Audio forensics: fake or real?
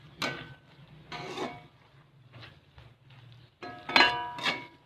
real